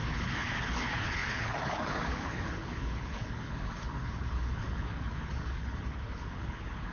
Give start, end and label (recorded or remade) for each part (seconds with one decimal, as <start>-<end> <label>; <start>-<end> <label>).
0.0-6.9 remade